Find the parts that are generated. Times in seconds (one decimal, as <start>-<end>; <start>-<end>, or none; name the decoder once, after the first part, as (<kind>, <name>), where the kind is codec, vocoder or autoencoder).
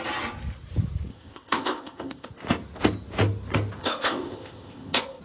1.1-2.3 (codec, ZipCodec); 3.8-5.2